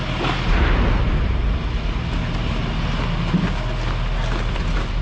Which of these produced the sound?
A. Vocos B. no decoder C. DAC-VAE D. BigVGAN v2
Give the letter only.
B